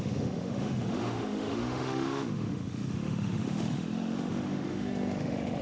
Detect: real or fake fake